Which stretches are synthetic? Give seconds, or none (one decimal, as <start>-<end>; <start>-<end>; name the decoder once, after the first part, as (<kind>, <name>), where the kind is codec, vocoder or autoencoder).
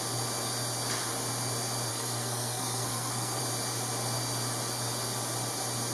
1.9-3.4 (codec, SNAC)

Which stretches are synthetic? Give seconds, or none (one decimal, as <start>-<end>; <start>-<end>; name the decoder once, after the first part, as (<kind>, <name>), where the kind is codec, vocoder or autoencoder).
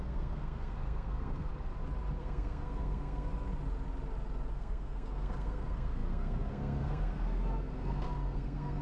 0.0-1.5 (codec, SNAC); 2.2-3.3; 4.5-8.8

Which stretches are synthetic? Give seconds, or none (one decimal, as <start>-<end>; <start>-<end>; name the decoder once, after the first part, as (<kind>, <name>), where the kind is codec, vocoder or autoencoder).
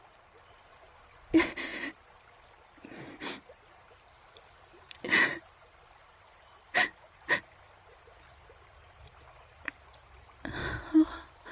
5.3-9.6 (vocoder, BigVGAN v2); 10.6-11.5